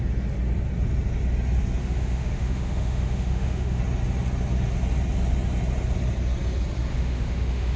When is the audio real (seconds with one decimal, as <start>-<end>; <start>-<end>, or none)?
0.0-1.8; 3.8-6.9